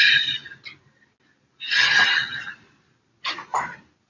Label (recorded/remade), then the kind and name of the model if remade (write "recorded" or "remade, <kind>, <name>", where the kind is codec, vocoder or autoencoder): recorded